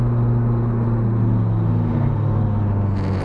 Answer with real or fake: real